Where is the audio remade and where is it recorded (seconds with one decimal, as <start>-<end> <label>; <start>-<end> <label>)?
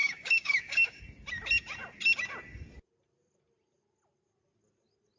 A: 0.0-1.0 remade; 1.0-5.2 recorded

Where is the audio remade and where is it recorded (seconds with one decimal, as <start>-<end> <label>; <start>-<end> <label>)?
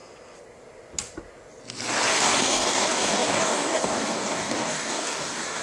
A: 0.0-2.1 recorded; 2.1-5.6 remade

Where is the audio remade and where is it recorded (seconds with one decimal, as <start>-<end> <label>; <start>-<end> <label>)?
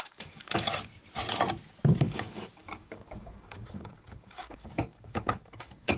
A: 0.0-0.7 remade; 0.7-1.9 recorded; 1.9-6.0 remade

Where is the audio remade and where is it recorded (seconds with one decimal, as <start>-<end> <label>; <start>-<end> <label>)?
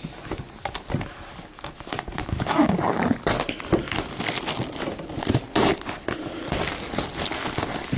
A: 0.0-2.2 recorded; 2.2-3.0 remade; 3.0-8.0 recorded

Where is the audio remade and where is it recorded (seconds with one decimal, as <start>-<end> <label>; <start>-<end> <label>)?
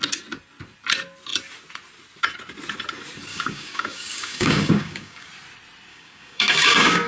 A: 0.0-3.3 recorded; 3.3-5.3 remade; 5.3-5.9 recorded; 5.9-7.1 remade